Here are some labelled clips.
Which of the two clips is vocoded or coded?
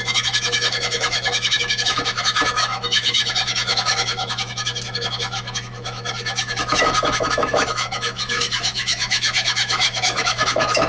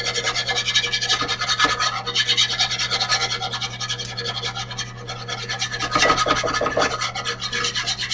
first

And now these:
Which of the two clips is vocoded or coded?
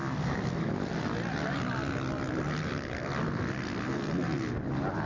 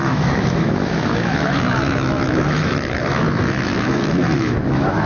second